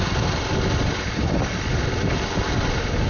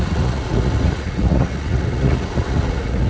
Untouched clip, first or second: first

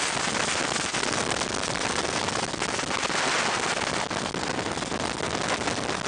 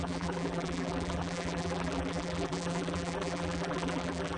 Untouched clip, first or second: first